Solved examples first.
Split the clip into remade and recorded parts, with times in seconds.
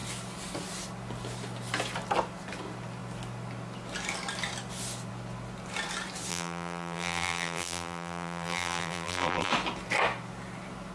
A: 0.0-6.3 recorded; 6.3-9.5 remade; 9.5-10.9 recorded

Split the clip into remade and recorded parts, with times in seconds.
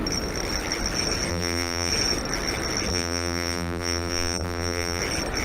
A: 0.0-1.3 recorded; 1.3-1.9 remade; 1.9-2.9 recorded; 2.9-5.0 remade; 5.0-5.4 recorded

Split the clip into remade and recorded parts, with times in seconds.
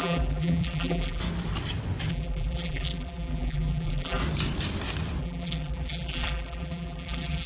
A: 0.0-1.2 remade; 1.2-2.1 recorded; 2.1-4.2 remade; 4.2-5.2 recorded; 5.2-7.5 remade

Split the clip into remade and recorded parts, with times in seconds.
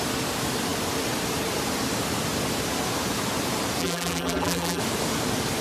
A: 0.0-3.8 recorded; 3.8-4.8 remade; 4.8-5.6 recorded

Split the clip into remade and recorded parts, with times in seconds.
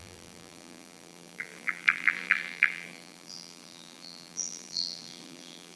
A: 0.0-5.8 remade